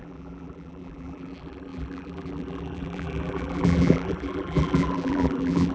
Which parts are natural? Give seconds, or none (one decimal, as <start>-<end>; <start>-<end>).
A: none